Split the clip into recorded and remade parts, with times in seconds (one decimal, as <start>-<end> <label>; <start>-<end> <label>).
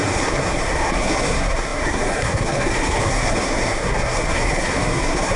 0.0-5.4 remade